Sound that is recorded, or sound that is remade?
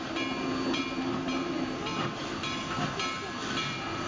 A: recorded